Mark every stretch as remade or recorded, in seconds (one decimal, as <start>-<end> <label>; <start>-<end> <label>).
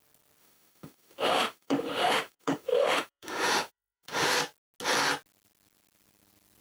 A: 0.0-0.4 recorded; 0.4-4.4 remade; 4.4-6.6 recorded